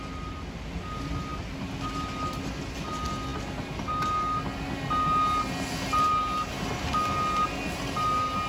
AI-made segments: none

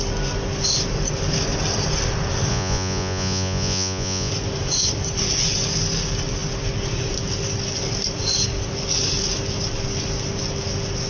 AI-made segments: 2.5-4.3 (vocoder, Vocos)

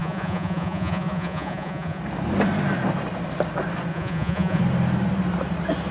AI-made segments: 0.0-2.0 (vocoder, Vocos); 3.9-4.6

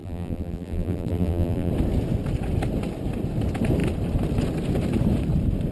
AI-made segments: 0.0-1.7 (vocoder, BigVGAN v2)

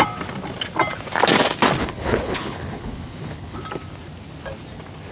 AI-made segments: 1.8-3.6 (codec, HILCodec)

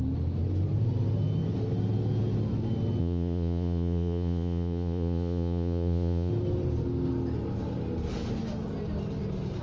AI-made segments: 3.0-6.3 (vocoder, Vocos)

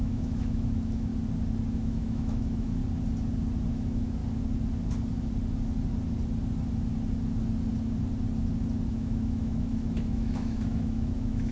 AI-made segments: 0.0-1.1 (autoencoder, DAC-VAE); 1.7-2.8; 3.7-4.2; 8.9-11.5

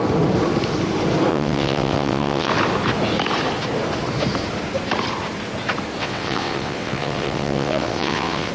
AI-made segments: 1.3-2.5 (vocoder, WaveNeXt); 6.0-8.5